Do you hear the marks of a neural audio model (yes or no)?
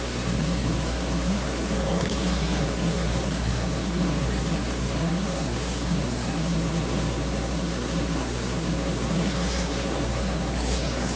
yes